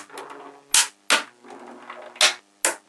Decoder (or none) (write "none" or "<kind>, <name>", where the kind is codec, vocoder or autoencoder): none